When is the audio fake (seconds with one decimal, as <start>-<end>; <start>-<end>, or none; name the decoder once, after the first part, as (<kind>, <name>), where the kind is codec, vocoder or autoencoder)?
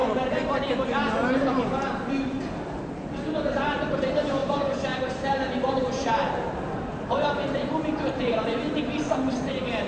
0.0-0.7 (vocoder, BigVGAN v2); 1.4-2.4; 4.4-9.9